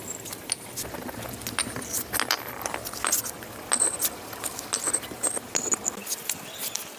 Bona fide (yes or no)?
yes